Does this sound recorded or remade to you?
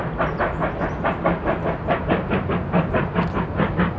recorded